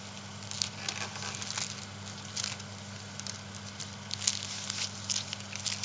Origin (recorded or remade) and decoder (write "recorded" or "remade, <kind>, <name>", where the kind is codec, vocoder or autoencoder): recorded